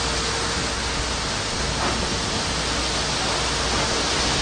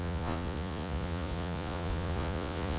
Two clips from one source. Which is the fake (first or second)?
second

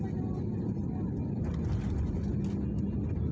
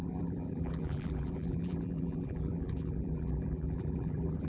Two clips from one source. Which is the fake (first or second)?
second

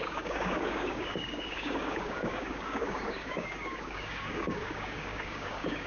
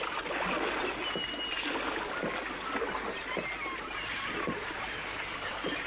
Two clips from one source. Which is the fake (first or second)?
first